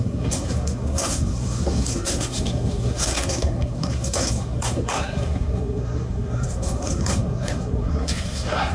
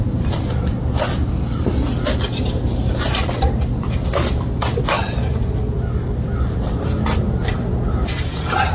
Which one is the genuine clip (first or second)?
second